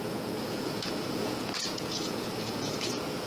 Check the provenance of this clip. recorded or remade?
remade